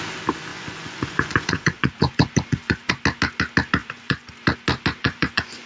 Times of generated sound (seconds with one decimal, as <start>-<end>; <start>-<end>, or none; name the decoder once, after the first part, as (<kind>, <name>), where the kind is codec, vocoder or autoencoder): 0.5-2.9 (vocoder, Vocos); 3.8-4.3; 5.0-5.7